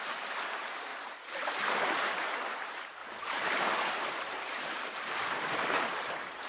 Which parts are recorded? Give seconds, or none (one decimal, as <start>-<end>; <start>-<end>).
none